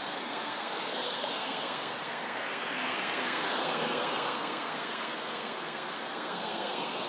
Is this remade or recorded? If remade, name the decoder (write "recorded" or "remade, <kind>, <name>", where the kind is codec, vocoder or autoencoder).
remade, codec, SNAC